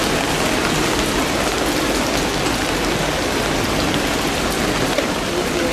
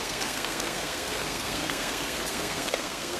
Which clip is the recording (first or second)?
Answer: first